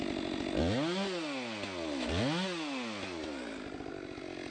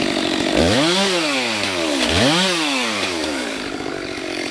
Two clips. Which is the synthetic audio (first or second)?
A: second